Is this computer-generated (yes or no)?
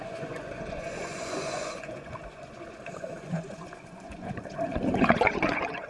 yes